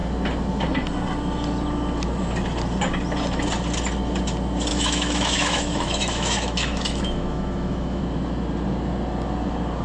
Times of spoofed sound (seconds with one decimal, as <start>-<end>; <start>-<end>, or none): 4.7-8.0